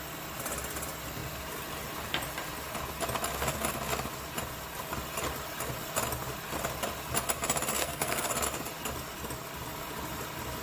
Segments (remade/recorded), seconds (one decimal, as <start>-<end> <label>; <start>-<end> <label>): 0.0-7.8 recorded; 7.8-8.3 remade; 8.3-10.6 recorded